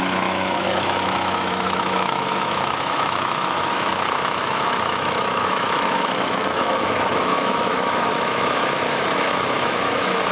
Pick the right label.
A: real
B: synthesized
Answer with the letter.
B